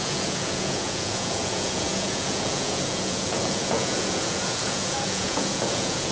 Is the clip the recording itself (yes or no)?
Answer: no